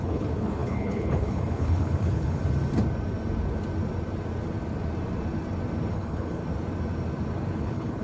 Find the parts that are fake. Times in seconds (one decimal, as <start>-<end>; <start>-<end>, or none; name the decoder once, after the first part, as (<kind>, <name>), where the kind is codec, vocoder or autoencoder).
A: 0.0-2.4 (codec, HILCodec); 5.9-6.4; 7.6-8.0